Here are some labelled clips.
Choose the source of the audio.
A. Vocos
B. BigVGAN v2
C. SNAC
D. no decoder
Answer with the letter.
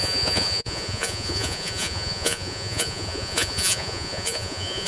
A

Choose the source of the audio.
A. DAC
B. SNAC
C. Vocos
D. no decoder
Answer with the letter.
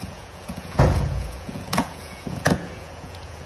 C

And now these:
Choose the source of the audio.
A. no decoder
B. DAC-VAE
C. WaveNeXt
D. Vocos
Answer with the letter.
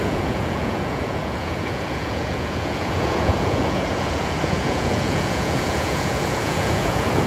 D